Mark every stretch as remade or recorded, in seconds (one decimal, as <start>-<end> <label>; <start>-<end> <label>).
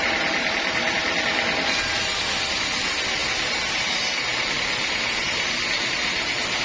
0.0-6.6 recorded